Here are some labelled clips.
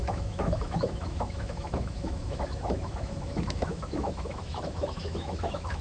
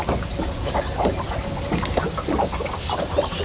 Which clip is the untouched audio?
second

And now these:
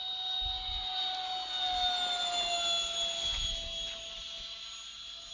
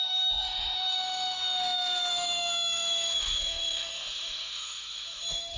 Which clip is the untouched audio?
first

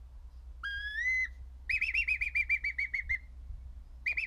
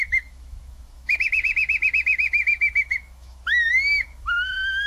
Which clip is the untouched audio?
first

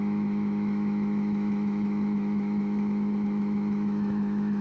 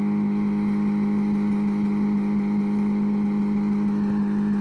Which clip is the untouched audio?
second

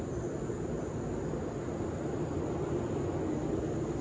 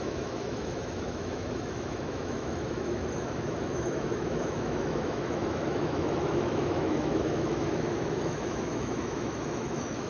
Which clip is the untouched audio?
first